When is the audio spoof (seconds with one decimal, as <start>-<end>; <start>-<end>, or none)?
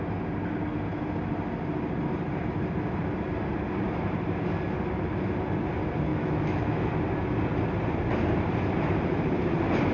6.1-6.9